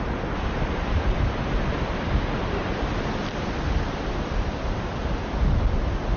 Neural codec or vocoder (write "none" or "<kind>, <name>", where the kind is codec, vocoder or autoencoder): none